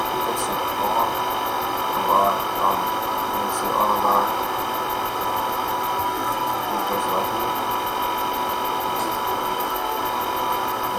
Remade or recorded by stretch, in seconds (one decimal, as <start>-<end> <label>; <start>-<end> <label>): 0.0-6.0 recorded; 6.0-6.9 remade; 6.9-9.4 recorded; 9.4-10.0 remade; 10.0-11.0 recorded